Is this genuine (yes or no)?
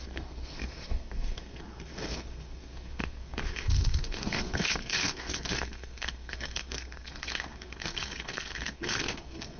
no